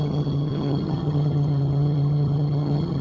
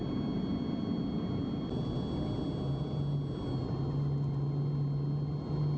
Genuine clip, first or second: second